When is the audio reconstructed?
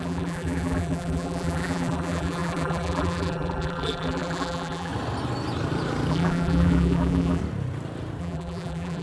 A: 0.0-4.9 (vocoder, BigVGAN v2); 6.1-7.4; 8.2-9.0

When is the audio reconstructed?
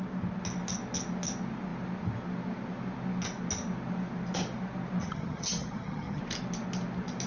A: 5.0-6.2 (vocoder, HiFi-GAN)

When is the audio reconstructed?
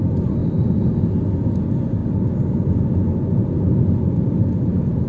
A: none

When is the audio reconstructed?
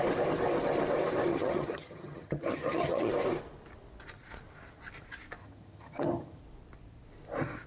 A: 1.3-3.1 (vocoder, HiFi-GAN); 5.4-6.4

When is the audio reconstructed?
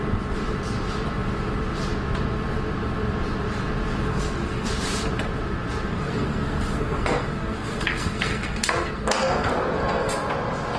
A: 4.1-4.7 (codec, SNAC); 5.9-10.1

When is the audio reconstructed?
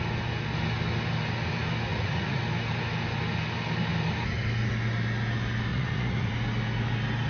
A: 1.9-2.4 (vocoder, Vocos); 5.7-6.3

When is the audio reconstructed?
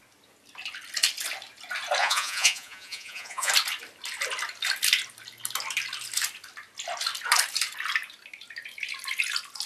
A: 2.0-3.5 (vocoder, Vocos)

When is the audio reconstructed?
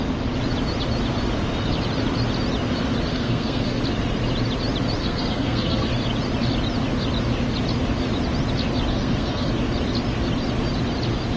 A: 3.1-3.8 (codec, SNAC); 5.0-5.9; 8.9-9.5